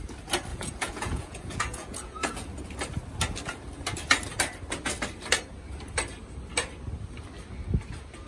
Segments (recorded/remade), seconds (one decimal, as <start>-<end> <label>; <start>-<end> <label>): 0.0-0.5 recorded; 0.5-2.5 remade; 2.5-8.3 recorded